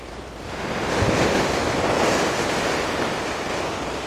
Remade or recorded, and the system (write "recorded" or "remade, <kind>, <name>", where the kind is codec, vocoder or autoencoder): recorded